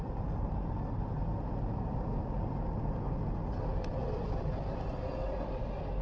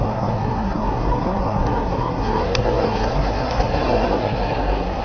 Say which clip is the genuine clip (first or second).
first